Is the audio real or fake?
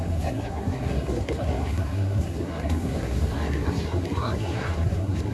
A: fake